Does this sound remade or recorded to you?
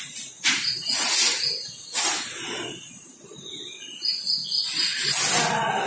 recorded